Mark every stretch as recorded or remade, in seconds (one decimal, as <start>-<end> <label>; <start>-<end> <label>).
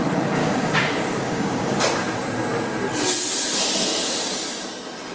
0.0-0.4 recorded; 0.4-1.8 remade; 1.8-5.1 recorded